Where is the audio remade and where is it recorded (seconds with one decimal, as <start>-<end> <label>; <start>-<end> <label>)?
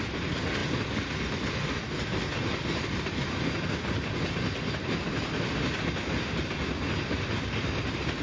0.0-8.2 recorded